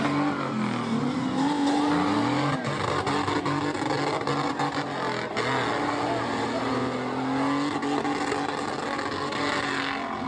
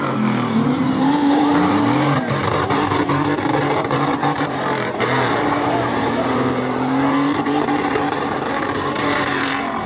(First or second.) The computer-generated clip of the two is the second